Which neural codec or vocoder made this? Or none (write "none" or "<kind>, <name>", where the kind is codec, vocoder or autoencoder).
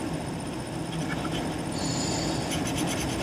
none